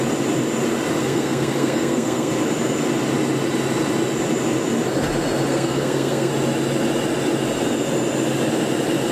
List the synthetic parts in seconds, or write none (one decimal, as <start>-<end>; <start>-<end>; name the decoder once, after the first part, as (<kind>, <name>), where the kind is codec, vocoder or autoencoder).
1.0-2.3 (codec, SNAC); 5.5-6.3